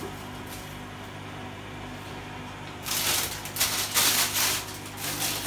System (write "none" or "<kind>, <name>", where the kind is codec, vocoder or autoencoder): none